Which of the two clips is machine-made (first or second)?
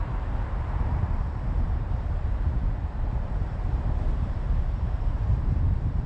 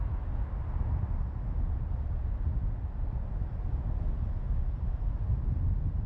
first